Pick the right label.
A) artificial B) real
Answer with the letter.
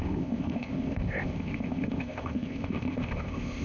A